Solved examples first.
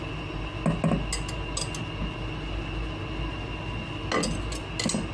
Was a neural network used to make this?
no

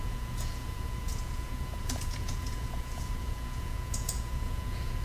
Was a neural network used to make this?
yes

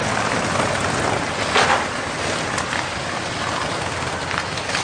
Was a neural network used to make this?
no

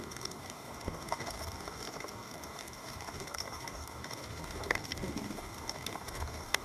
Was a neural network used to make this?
yes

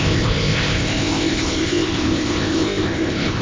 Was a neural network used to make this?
yes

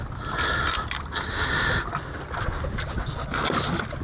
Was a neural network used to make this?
no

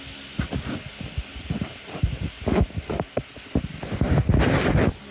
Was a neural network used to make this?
no